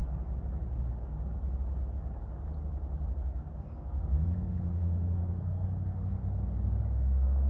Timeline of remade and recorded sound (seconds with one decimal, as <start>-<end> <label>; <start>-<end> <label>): 0.0-3.1 recorded; 3.1-6.2 remade; 6.2-6.8 recorded; 6.8-7.5 remade